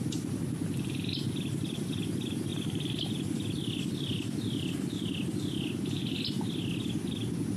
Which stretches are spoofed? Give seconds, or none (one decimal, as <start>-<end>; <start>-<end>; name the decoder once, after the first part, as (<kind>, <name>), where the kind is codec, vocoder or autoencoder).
none

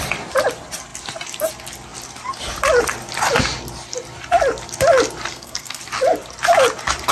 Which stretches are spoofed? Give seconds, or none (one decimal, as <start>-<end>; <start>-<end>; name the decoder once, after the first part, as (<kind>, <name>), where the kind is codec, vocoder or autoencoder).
5.3-5.8 (codec, SNAC)

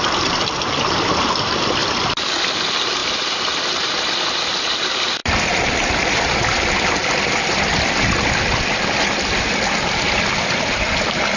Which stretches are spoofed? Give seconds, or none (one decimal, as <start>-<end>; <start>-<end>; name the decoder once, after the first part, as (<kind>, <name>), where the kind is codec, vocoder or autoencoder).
1.8-2.3 (vocoder, BigVGAN v2); 5.2-9.0

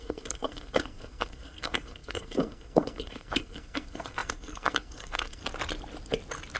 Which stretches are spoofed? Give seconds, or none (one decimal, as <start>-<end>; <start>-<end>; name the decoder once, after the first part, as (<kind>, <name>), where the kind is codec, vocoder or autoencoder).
0.0-5.4 (codec, SNAC)

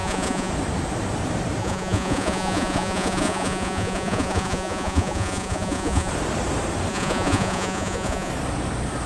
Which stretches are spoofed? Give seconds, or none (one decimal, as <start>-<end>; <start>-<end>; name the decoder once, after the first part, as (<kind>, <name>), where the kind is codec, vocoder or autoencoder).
0.0-0.5 (vocoder, Vocos); 1.6-6.1; 6.9-8.3

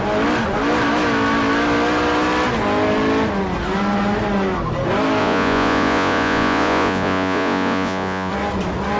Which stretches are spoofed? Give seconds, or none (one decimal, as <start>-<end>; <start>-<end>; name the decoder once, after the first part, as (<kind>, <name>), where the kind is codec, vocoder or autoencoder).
5.2-8.3 (vocoder, Vocos)

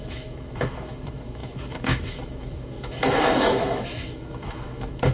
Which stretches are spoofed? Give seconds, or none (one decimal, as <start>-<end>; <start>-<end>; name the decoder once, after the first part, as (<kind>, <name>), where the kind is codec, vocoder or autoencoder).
0.0-5.1 (autoencoder, DAC-VAE)

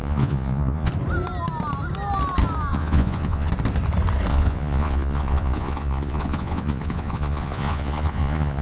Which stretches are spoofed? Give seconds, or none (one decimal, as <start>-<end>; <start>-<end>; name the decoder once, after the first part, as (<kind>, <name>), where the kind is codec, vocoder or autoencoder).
0.0-0.9 (vocoder, Vocos); 2.7-3.5; 4.3-8.6